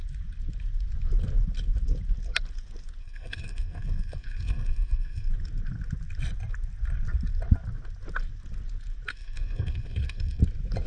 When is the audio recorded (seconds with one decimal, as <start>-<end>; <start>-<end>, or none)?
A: 0.0-3.0; 5.3-9.1; 10.4-10.9